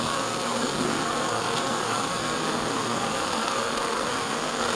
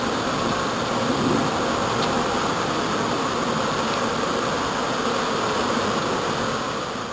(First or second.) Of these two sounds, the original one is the second